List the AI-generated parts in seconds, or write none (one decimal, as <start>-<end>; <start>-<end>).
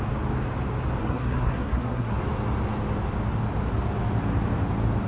1.0-2.1